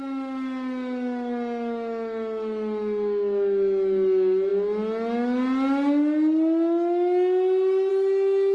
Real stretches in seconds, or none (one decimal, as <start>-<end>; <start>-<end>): 0.0-8.5